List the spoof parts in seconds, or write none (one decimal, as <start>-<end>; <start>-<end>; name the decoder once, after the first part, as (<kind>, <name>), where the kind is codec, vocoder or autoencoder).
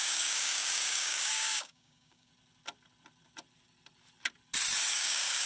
0.0-2.3 (codec, DAC); 4.9-5.5